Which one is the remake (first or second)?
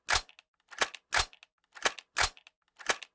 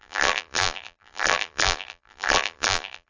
second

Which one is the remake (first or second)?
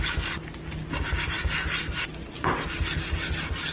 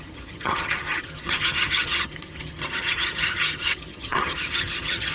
second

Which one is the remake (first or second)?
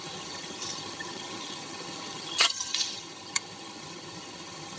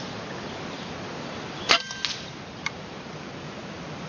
first